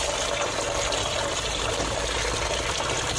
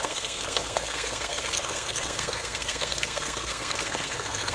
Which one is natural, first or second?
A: first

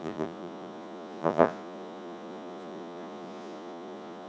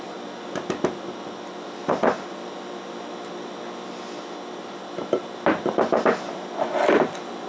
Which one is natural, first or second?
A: second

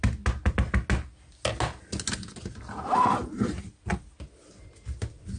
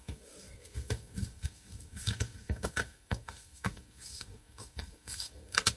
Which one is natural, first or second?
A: first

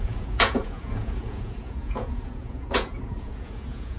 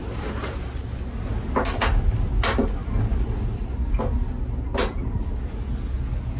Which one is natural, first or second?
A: second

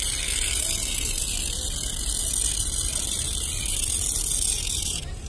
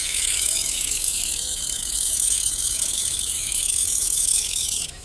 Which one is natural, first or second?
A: first